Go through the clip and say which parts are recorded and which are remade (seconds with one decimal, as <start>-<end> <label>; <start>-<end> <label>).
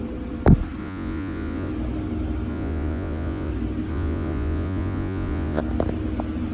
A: 0.0-0.8 recorded; 0.8-1.7 remade; 1.7-2.5 recorded; 2.5-3.5 remade; 3.5-3.9 recorded; 3.9-5.6 remade; 5.6-6.5 recorded